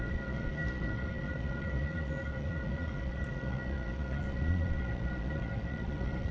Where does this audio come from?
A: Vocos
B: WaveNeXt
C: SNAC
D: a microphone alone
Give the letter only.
A